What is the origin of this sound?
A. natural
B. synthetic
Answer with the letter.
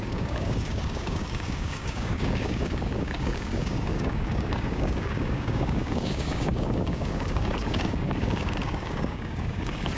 B